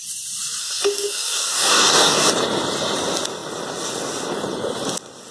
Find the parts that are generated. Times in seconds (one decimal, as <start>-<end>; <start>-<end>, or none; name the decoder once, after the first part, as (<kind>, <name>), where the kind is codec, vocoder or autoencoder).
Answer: 0.6-2.3 (codec, DAC)